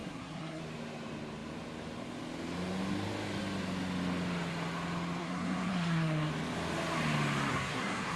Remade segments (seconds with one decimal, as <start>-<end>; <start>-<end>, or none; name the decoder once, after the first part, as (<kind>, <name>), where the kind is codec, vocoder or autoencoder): 0.0-0.6 (codec, SNAC); 5.2-6.3; 7.5-8.2